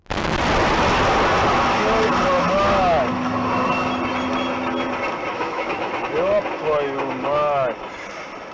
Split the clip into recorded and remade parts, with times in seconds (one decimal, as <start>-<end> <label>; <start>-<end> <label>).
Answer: 0.0-5.3 recorded; 5.3-5.9 remade; 5.9-8.5 recorded